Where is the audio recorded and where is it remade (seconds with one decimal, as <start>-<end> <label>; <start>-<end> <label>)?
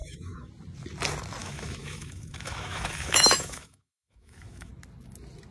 0.0-0.5 remade; 0.5-1.4 recorded; 1.4-4.7 remade; 4.7-5.5 recorded